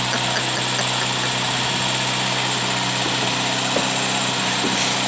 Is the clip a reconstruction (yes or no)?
no